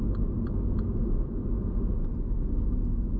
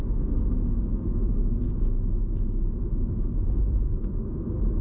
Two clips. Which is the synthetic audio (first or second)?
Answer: second